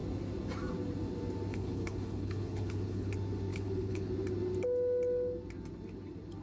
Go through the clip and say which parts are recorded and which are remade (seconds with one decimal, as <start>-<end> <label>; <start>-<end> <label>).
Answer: 0.0-1.5 recorded; 1.5-3.1 remade; 3.1-3.5 recorded; 3.5-4.1 remade; 4.1-6.4 recorded